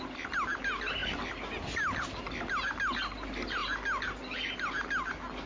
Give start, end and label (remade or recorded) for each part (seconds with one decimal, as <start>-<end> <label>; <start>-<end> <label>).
0.0-5.5 recorded

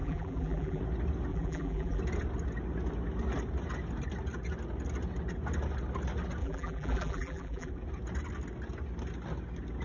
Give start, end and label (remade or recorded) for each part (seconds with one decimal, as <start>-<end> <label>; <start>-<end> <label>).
0.0-0.8 remade; 0.8-1.3 recorded; 1.3-2.0 remade; 2.0-6.4 recorded; 6.4-7.7 remade; 7.7-9.8 recorded

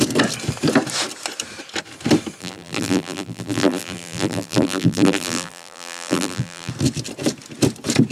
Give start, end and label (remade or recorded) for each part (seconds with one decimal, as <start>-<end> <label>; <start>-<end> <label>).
0.0-2.4 recorded; 2.4-6.7 remade; 6.7-8.1 recorded